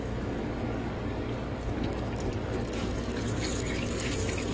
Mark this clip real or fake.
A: fake